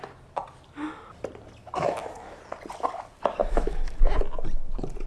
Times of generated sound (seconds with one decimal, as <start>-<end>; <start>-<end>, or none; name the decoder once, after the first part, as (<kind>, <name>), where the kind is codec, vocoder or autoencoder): 1.6-2.4 (autoencoder, DAC-VAE); 3.4-4.0